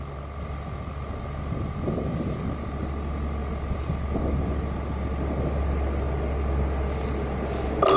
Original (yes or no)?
yes